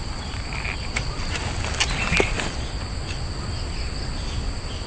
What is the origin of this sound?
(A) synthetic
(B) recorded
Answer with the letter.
B